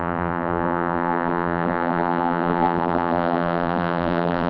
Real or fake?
fake